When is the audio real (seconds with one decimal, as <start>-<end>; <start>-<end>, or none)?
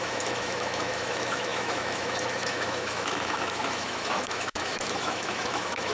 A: none